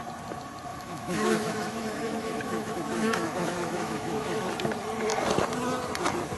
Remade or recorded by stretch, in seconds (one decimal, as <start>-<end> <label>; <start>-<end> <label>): 0.0-0.7 recorded; 0.7-4.5 remade; 4.5-6.4 recorded